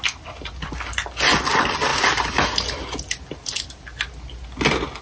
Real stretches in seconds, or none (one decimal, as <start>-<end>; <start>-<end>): 0.0-5.0